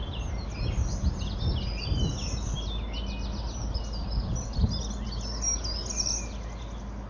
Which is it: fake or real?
real